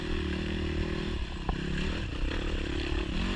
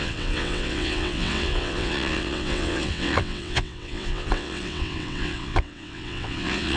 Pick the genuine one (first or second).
first